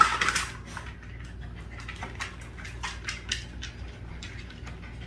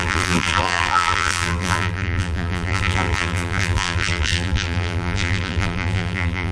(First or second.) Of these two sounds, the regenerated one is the second